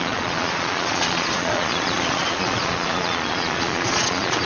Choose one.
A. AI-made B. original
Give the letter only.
A